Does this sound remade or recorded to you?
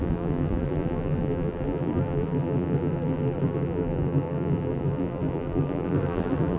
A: remade